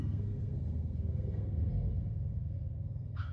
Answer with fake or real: fake